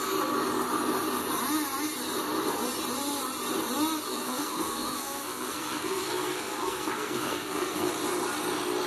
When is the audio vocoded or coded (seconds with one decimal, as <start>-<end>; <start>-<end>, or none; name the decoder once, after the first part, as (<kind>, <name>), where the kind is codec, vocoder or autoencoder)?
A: 4.1-7.9 (codec, SNAC)